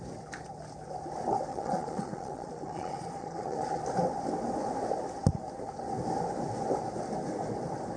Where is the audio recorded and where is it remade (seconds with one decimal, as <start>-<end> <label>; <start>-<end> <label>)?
0.0-1.5 recorded; 1.5-3.8 remade; 3.8-8.0 recorded